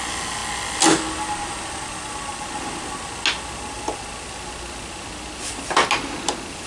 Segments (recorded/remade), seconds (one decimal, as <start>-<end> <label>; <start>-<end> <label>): 0.0-6.7 recorded